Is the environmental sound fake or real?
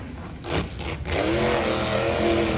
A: real